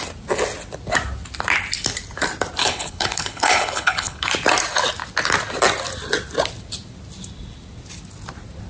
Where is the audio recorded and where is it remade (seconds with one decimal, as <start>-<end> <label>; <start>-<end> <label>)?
0.0-2.6 recorded; 2.6-4.3 remade; 4.3-8.7 recorded